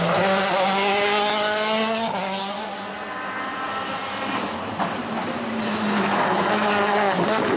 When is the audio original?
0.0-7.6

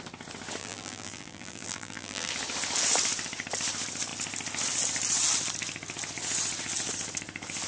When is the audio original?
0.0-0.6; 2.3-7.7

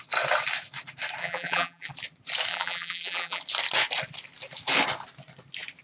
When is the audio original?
0.0-1.2; 1.9-2.5; 3.4-5.8

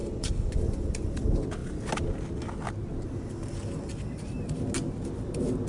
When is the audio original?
0.5-5.7

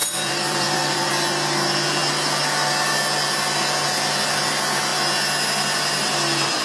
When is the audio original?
1.1-6.6